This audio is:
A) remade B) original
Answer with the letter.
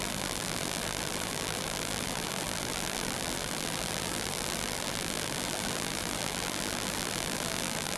A